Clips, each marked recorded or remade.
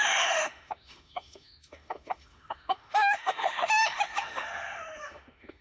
remade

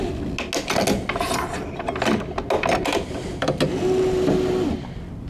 recorded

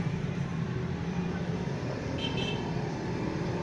remade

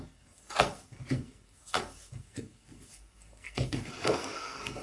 remade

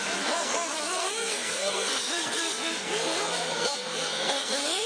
remade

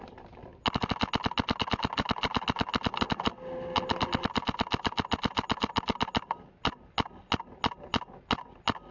recorded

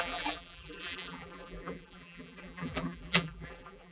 remade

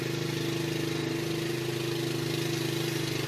recorded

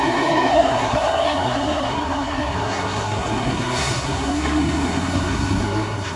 remade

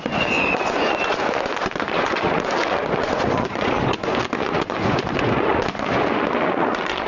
remade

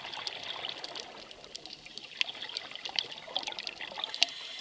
recorded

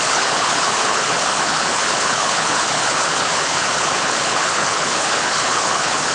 remade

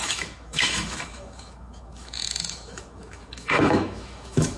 remade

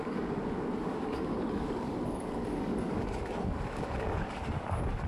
remade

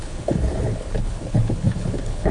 remade